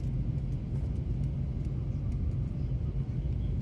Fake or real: real